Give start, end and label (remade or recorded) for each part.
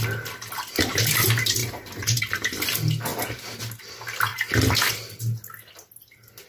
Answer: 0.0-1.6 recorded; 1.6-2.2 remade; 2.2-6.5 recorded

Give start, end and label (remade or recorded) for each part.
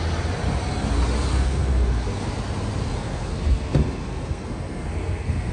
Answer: 0.0-1.3 recorded; 1.3-2.3 remade; 2.3-2.8 recorded; 2.8-5.5 remade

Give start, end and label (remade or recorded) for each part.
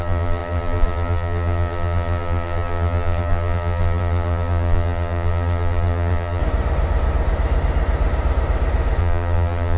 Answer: 0.0-6.4 remade; 6.4-9.0 recorded; 9.0-9.8 remade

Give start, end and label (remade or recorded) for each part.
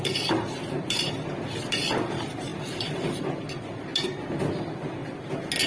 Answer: 0.0-3.9 remade; 3.9-4.5 recorded; 4.5-5.0 remade; 5.0-5.7 recorded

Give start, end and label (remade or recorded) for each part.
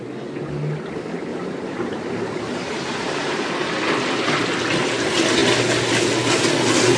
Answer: 0.0-1.3 recorded; 1.3-3.5 remade; 3.5-7.0 recorded